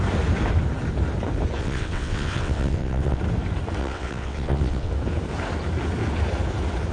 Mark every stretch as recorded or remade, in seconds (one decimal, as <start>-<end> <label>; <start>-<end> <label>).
0.0-1.6 recorded; 1.6-3.2 remade; 3.2-3.8 recorded; 3.8-4.9 remade; 4.9-6.9 recorded